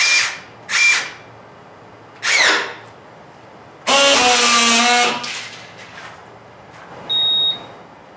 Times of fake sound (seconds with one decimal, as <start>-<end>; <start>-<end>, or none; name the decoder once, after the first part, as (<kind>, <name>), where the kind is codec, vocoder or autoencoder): none